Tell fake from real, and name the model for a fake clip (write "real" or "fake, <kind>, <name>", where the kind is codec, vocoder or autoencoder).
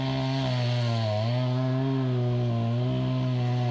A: real